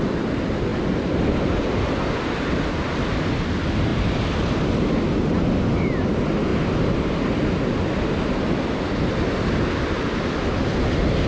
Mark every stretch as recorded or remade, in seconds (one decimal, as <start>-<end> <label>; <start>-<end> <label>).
0.0-3.9 recorded; 3.9-4.7 remade; 4.7-6.5 recorded; 6.5-7.3 remade; 7.3-11.3 recorded